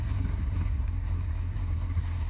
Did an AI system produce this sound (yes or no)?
yes